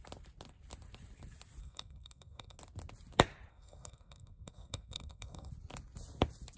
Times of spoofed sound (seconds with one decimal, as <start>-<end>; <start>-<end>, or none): 1.6-2.6; 3.5-5.5